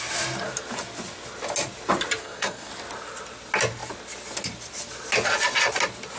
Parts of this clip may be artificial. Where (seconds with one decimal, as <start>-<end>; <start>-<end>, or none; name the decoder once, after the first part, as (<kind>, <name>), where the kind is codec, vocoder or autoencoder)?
2.2-2.7 (codec, SNAC)